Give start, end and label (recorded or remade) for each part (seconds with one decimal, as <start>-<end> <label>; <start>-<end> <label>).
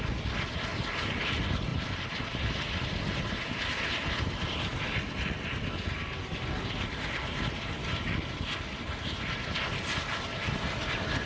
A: 0.0-1.7 recorded; 1.7-3.6 remade; 3.6-11.3 recorded